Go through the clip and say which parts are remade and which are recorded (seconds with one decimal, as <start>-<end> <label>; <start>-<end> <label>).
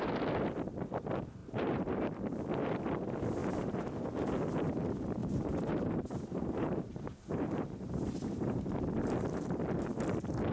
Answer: 0.0-1.4 recorded; 1.4-2.1 remade; 2.1-3.4 recorded; 3.4-3.9 remade; 3.9-5.2 recorded; 5.2-8.8 remade; 8.8-10.5 recorded